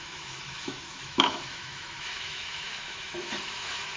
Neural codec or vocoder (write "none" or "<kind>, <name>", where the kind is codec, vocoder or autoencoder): autoencoder, DAC-VAE